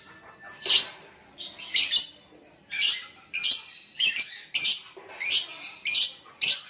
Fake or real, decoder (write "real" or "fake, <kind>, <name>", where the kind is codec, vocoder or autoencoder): real